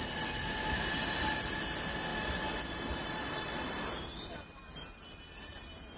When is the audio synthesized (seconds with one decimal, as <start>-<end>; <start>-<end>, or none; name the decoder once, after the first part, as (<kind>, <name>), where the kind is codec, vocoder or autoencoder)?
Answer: none

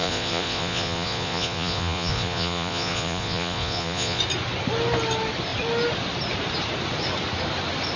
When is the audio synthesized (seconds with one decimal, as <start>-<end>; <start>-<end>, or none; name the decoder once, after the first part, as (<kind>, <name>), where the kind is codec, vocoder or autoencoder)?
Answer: 0.0-4.2 (vocoder, Vocos)

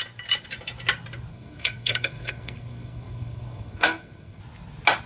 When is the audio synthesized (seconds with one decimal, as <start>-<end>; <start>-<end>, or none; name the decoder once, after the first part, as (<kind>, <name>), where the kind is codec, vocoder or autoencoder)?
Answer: 1.3-4.4 (codec, SNAC)

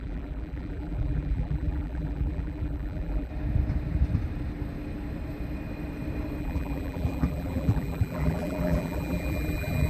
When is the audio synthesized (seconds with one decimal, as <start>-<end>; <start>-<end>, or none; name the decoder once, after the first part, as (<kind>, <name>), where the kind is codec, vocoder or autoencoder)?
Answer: 0.0-3.3 (vocoder, BigVGAN v2); 6.4-9.9

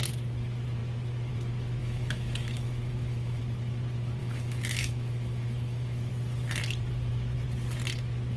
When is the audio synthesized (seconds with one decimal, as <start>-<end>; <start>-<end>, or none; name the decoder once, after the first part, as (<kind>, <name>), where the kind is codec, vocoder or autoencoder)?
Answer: 1.8-3.4 (autoencoder, DAC-VAE); 4.2-6.1

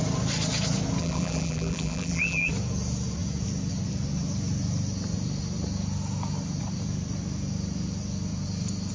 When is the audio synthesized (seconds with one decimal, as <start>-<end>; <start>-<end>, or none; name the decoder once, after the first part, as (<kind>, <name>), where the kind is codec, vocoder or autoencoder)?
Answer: 1.0-2.5 (vocoder, BigVGAN v2)

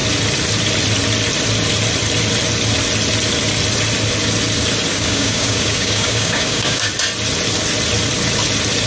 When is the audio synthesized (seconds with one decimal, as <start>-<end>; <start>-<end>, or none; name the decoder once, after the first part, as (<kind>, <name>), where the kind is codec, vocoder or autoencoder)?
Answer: 4.9-6.9 (codec, DAC)